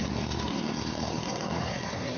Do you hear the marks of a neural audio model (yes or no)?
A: yes